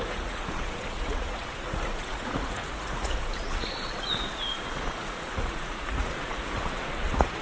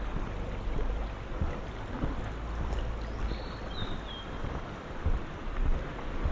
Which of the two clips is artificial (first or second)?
first